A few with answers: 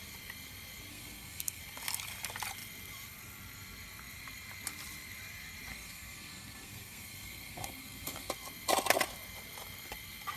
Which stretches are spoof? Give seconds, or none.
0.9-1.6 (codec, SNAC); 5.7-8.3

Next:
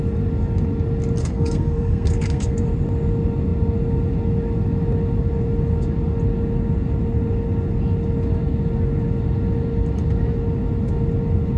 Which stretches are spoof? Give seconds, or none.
1.2-2.7 (codec, SNAC)

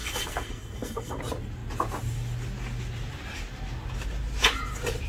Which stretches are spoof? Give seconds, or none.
0.0-1.2 (codec, SNAC)